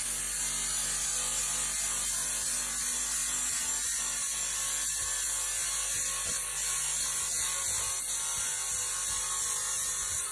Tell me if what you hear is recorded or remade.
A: recorded